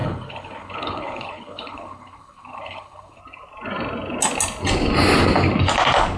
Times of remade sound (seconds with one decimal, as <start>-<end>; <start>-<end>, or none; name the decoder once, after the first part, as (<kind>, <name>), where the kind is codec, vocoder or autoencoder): 0.0-3.2 (codec, HILCodec)